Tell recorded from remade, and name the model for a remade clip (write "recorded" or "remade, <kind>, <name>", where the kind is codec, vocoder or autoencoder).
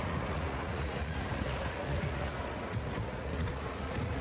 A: remade, vocoder, Vocos